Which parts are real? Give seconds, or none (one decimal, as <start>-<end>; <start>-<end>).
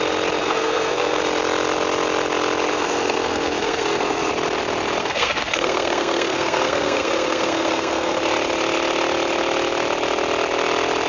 0.0-0.4; 1.2-2.7; 4.3-5.0; 8.2-11.1